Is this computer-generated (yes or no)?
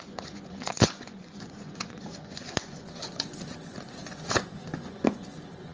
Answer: yes